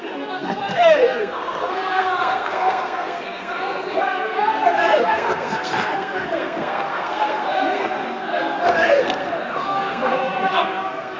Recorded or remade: remade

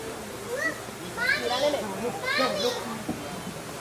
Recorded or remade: recorded